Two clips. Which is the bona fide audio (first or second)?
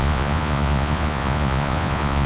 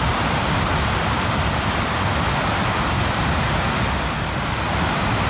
second